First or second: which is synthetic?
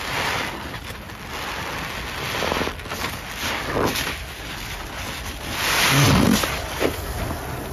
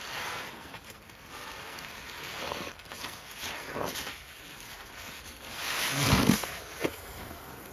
second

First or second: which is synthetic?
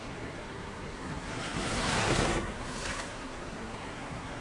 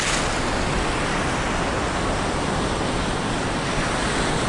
first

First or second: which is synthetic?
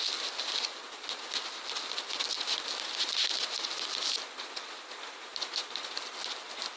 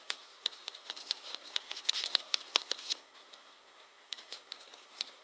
second